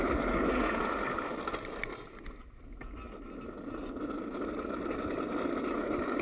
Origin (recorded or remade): recorded